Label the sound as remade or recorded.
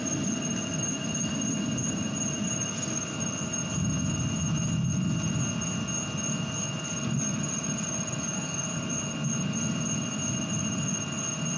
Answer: recorded